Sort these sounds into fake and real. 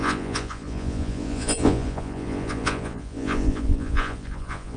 fake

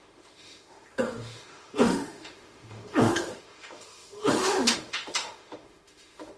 fake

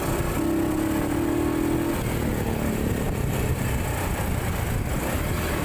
real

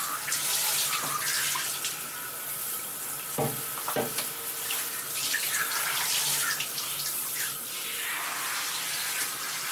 real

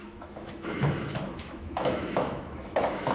fake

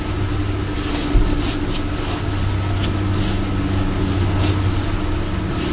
real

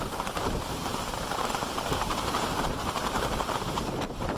fake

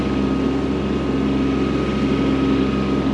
real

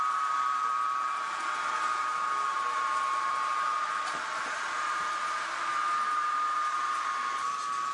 fake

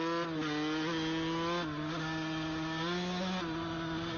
real